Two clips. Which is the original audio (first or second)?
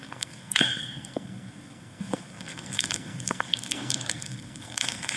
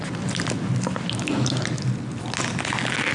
second